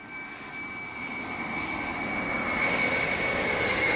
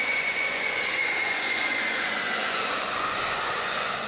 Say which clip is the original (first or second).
first